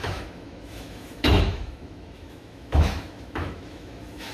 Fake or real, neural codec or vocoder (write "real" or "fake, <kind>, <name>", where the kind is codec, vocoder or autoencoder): fake, autoencoder, DAC-VAE